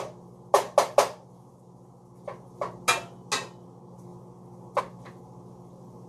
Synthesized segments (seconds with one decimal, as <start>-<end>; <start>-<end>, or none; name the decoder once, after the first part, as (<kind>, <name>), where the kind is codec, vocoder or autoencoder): none